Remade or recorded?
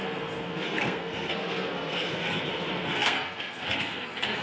remade